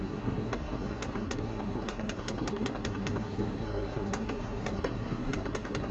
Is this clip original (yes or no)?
no